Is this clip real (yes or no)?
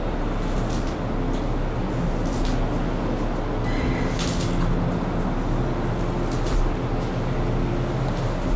yes